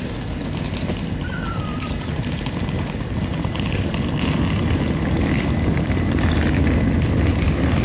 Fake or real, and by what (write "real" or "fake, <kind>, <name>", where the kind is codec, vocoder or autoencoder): real